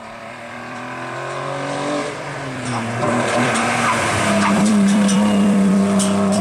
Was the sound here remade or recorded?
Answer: remade